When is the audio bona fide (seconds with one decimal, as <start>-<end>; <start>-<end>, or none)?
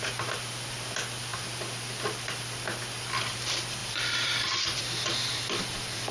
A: 0.0-3.8; 4.8-6.1